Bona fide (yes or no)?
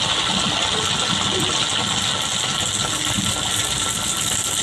yes